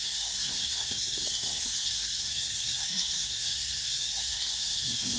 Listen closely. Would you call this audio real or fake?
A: fake